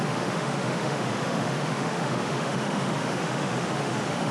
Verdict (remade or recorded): remade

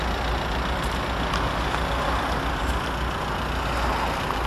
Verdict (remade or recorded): recorded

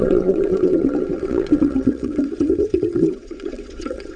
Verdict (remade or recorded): remade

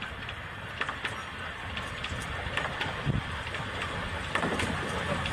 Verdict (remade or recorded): remade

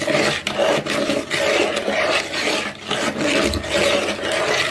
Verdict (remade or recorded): recorded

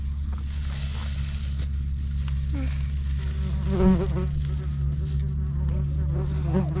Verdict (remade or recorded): recorded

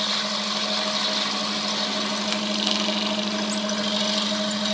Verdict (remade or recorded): recorded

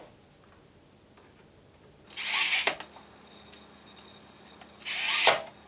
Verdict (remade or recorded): recorded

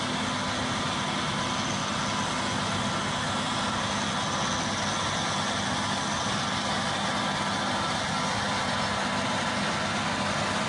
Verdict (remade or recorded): recorded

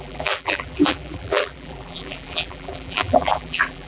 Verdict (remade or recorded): remade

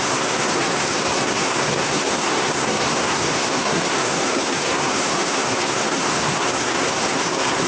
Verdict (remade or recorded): remade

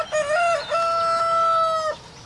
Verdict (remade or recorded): recorded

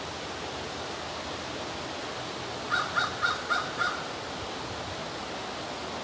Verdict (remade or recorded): recorded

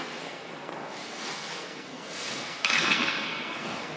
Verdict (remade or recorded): remade